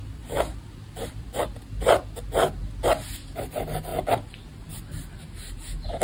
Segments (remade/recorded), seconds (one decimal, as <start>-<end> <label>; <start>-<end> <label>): 0.0-1.4 remade; 1.4-3.9 recorded; 3.9-4.7 remade; 4.7-6.0 recorded